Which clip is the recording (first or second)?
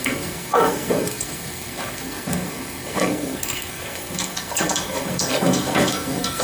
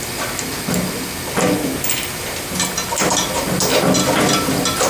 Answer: second